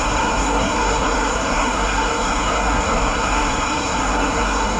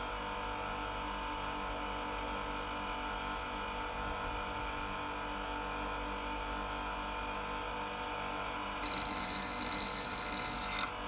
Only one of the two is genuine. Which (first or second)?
second